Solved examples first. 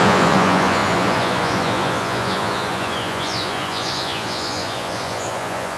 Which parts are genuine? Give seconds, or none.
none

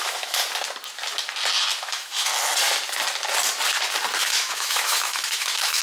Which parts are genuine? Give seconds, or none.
0.4-1.8; 2.3-4.2

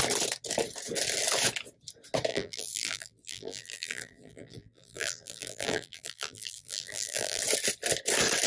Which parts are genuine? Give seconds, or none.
0.0-2.3; 7.4-8.5

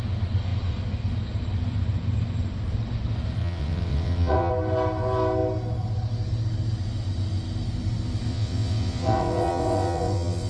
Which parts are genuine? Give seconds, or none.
0.0-3.4; 4.5-8.3

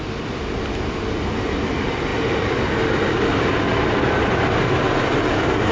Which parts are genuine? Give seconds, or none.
0.0-5.7

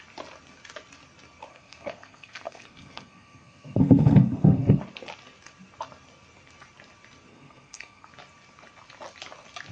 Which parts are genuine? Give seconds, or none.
0.0-1.5; 4.8-7.3; 8.1-9.7

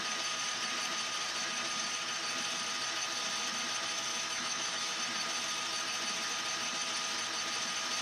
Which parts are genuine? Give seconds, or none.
0.0-4.1; 5.0-8.0